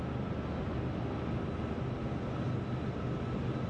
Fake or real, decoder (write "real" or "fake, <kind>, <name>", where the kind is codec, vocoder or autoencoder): real